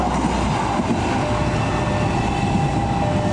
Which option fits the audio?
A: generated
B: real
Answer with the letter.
B